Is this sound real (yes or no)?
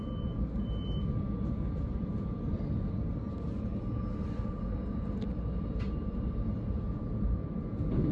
yes